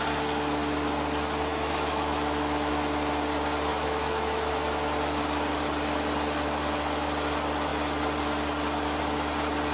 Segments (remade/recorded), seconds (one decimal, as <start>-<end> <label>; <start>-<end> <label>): 0.0-1.5 recorded; 1.5-2.7 remade; 2.7-3.7 recorded; 3.7-4.5 remade; 4.5-9.7 recorded